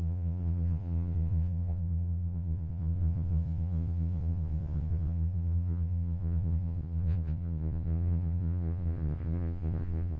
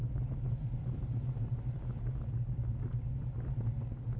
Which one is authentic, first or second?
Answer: second